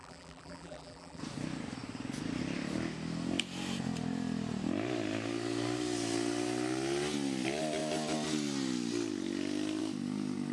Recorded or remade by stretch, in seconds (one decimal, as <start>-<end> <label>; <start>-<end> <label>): 0.0-1.2 remade; 1.2-10.5 recorded